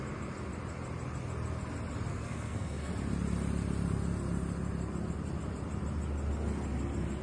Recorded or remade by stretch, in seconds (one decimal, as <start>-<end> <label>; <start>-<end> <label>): 0.0-2.1 recorded; 2.1-2.9 remade; 2.9-7.2 recorded